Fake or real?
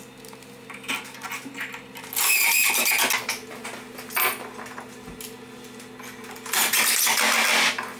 real